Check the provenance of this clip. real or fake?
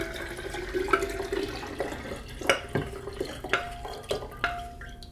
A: real